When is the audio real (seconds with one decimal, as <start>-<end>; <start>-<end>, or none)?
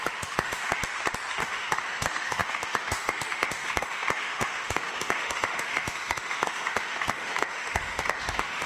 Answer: 0.8-1.4